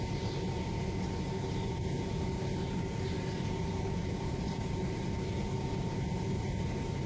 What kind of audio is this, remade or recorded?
recorded